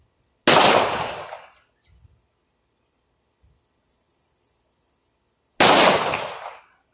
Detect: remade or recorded recorded